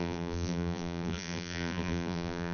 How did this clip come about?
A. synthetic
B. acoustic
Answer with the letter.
A